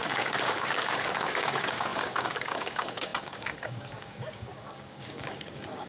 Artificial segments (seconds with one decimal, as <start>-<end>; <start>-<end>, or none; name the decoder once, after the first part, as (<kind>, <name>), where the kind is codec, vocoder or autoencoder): 0.0-5.9 (codec, DAC)

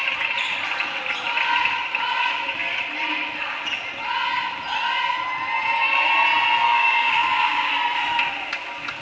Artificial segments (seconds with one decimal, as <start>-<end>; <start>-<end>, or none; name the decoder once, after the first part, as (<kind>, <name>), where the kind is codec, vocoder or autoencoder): 6.7-7.7 (codec, DAC)

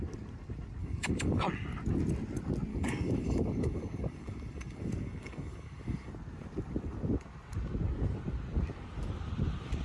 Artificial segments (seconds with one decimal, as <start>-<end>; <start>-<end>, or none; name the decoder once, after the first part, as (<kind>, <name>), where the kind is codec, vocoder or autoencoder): 0.8-1.4 (codec, DAC); 2.7-6.1

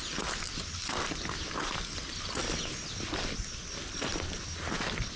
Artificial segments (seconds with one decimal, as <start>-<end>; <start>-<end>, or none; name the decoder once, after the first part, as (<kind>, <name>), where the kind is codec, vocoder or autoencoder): none